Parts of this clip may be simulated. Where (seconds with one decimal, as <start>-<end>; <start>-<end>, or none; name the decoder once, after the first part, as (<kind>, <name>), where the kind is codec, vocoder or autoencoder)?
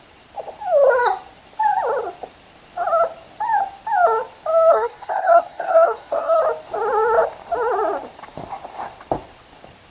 4.7-6.4 (codec, SNAC)